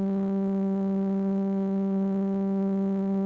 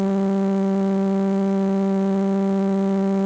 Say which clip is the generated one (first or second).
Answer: first